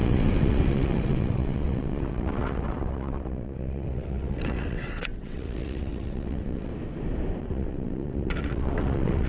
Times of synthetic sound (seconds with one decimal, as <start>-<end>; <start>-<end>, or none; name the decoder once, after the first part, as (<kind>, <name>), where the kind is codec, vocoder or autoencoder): 0.0-6.7 (vocoder, WaveNeXt); 7.4-9.3